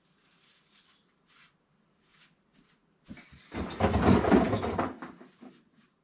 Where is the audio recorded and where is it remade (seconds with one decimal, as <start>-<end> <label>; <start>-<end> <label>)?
0.0-6.0 recorded